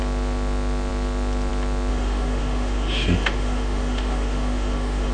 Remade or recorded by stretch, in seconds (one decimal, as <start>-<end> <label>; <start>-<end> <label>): 0.0-1.9 recorded; 1.9-5.1 remade